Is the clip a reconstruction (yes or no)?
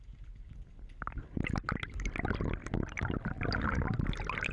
no